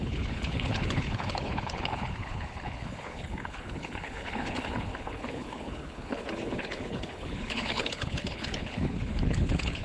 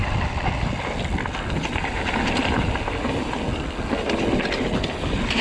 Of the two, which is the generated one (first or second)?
first